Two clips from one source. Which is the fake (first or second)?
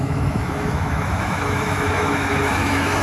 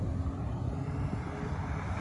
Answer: first